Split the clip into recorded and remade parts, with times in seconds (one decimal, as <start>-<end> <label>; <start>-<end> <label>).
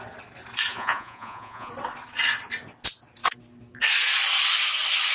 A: 0.0-0.7 recorded; 0.7-1.7 remade; 1.7-5.1 recorded